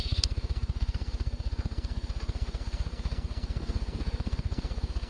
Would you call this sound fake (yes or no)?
yes